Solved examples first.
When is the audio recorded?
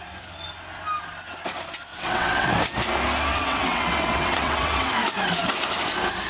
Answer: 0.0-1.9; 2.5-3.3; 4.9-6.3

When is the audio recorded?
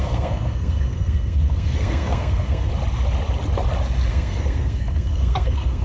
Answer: 2.7-4.1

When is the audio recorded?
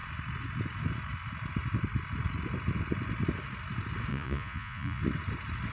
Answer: 0.0-4.1; 5.0-5.7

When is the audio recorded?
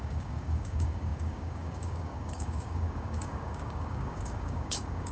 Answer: none